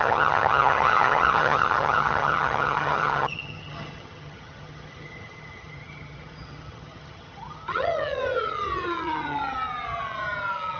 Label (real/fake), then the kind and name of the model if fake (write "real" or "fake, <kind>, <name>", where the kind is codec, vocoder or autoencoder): fake, vocoder, HiFi-GAN